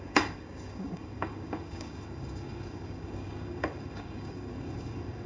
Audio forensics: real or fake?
fake